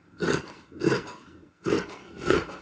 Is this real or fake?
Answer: fake